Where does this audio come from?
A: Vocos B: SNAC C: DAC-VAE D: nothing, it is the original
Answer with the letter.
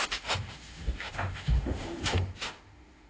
C